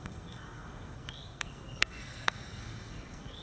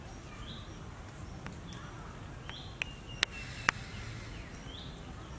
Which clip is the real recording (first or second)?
second